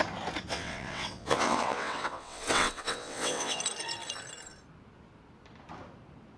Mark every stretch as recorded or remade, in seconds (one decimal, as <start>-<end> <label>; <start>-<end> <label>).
0.0-0.5 recorded; 0.5-3.6 remade; 3.6-6.4 recorded